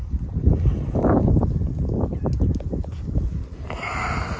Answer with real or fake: real